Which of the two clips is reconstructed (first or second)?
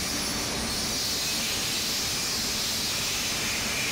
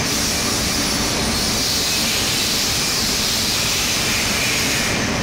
second